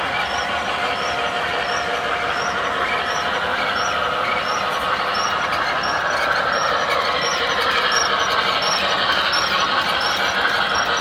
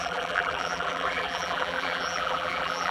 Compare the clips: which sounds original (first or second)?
first